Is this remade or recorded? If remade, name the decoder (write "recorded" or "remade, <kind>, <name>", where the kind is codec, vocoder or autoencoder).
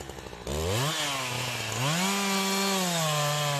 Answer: recorded